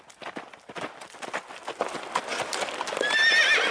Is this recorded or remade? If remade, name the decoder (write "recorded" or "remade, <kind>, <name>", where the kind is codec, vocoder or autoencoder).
recorded